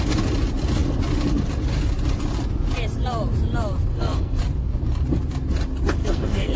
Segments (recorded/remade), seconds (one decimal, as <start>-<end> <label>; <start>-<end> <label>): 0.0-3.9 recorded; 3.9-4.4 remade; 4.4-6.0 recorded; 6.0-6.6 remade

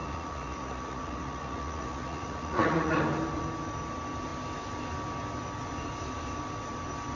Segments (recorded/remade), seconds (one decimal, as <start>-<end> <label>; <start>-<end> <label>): 0.0-3.0 remade; 3.0-7.2 recorded

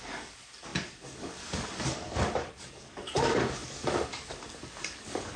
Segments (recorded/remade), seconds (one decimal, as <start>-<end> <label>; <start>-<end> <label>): 0.0-5.4 remade

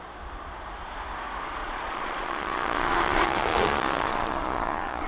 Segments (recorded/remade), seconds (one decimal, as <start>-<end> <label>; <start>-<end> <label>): 0.0-1.6 recorded; 1.6-5.1 remade